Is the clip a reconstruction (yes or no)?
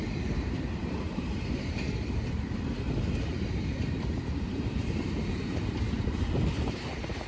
yes